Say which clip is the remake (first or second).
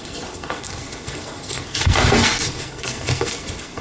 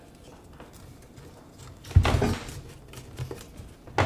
first